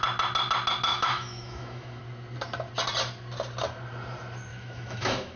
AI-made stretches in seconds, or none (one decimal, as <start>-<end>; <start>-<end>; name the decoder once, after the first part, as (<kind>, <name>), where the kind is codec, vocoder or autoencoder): 0.9-2.0 (autoencoder, DAC-VAE); 4.5-5.4